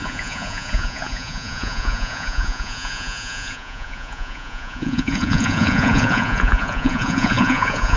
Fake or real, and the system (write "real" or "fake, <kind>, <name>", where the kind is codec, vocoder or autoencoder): fake, vocoder, Vocos